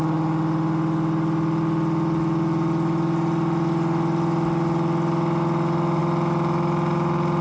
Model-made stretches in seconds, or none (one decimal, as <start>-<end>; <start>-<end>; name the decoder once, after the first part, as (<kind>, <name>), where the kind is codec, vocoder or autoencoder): none